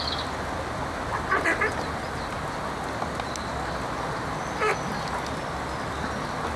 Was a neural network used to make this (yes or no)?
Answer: no